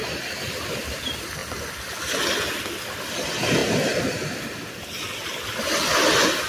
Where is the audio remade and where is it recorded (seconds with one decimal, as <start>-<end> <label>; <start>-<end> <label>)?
0.0-6.5 recorded